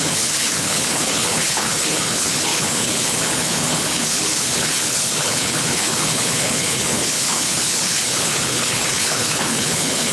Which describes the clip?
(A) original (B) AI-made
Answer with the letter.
B